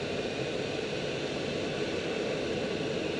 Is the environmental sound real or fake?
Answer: real